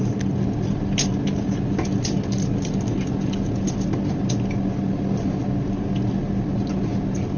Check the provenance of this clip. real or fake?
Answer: real